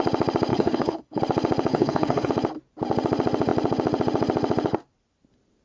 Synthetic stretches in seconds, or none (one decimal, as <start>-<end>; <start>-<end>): 0.5-1.2; 1.7-2.3